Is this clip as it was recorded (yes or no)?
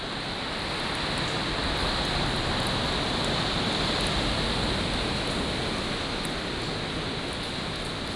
yes